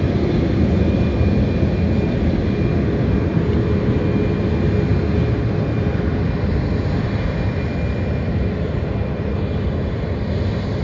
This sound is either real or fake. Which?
real